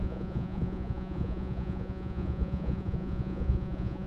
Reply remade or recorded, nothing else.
remade